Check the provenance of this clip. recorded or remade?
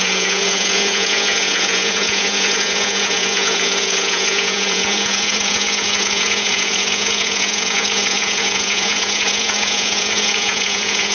remade